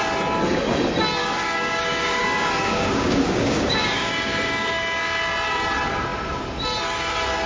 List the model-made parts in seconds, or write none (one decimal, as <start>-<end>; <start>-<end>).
1.2-5.0